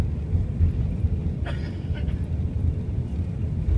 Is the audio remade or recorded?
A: recorded